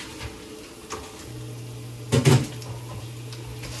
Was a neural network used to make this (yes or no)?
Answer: no